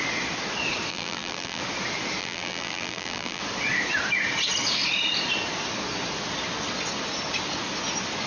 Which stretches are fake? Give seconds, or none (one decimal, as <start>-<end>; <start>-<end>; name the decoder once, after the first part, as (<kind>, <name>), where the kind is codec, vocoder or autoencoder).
0.9-1.6 (vocoder, BigVGAN v2); 2.2-3.4

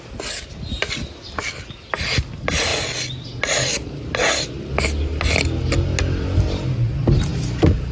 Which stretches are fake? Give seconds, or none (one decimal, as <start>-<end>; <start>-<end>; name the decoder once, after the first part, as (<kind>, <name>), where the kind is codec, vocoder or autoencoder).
7.3-7.9 (vocoder, BigVGAN v2)